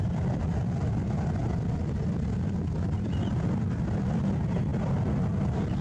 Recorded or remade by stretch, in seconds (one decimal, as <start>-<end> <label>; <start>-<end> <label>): 0.0-5.8 recorded